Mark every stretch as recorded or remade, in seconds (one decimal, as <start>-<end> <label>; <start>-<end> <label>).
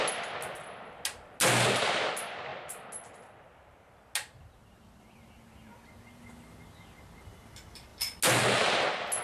0.0-9.2 recorded